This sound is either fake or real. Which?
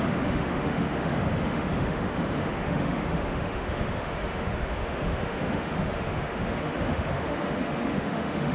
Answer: fake